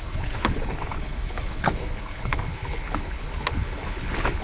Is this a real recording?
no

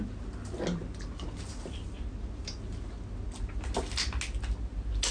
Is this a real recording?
yes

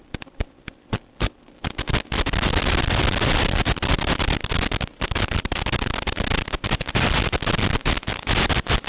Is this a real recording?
yes